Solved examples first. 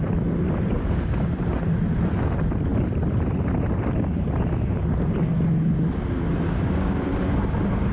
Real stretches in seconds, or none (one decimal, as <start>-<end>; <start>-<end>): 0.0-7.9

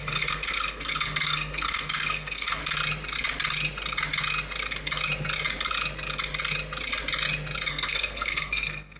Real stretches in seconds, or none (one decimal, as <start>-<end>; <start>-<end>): 2.6-7.7

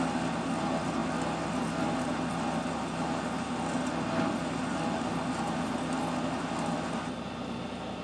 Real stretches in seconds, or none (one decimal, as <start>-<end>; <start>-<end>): 0.0-8.0

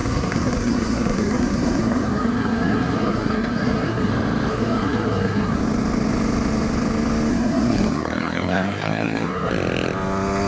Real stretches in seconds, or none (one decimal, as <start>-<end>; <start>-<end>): 4.1-4.5; 5.6-7.3; 9.5-10.5